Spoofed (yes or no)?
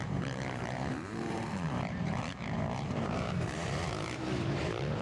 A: yes